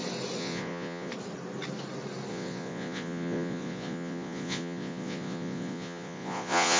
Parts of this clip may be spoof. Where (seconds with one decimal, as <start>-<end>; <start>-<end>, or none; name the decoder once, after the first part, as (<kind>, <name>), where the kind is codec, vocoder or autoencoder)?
0.4-1.1 (vocoder, Vocos); 2.3-6.8